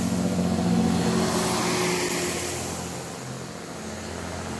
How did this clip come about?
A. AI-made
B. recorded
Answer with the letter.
B